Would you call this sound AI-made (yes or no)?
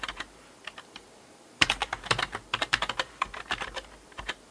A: yes